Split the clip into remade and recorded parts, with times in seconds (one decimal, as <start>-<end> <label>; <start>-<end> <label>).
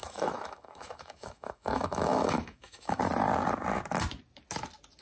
0.0-3.0 remade; 3.0-5.0 recorded